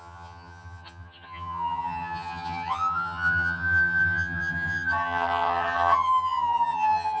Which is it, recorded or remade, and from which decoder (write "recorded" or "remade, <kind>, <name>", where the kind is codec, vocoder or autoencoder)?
remade, vocoder, HiFi-GAN